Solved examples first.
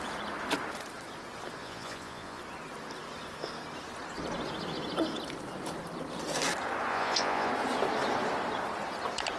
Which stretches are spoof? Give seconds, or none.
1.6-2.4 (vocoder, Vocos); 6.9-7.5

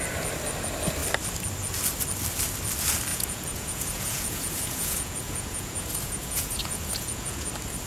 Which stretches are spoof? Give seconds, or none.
3.1-7.5 (vocoder, Vocos)

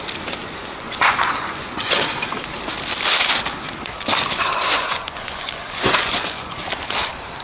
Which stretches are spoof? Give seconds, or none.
0.4-2.0 (vocoder, Vocos); 4.1-6.6